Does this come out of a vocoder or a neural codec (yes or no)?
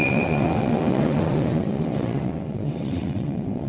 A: yes